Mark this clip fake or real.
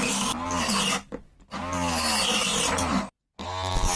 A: real